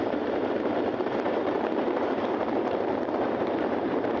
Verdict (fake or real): fake